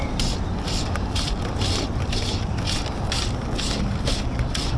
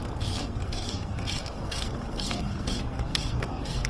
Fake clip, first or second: second